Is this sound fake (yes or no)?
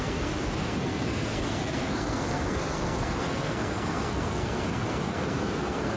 yes